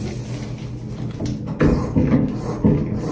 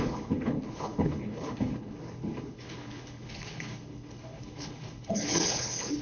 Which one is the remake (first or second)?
second